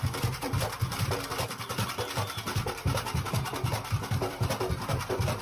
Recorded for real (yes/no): no